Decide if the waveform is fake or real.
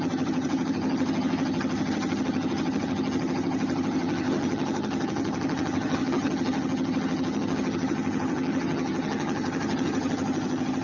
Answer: fake